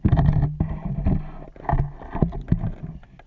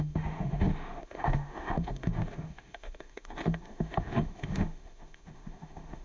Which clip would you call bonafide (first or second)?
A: first